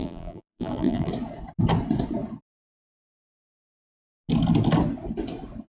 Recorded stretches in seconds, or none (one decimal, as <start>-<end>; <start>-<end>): 1.1-5.7